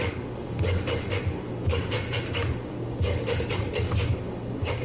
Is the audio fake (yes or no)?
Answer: yes